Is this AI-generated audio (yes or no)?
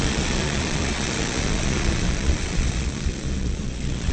yes